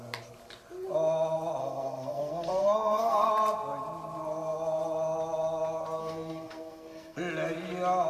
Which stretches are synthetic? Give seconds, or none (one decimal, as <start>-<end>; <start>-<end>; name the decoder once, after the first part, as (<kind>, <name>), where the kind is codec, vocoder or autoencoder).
1.6-3.3 (codec, SNAC); 6.0-7.2